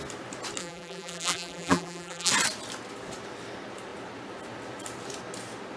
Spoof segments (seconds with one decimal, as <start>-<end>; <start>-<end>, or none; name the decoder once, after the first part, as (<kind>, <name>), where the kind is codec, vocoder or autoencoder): 0.6-2.3 (vocoder, BigVGAN v2)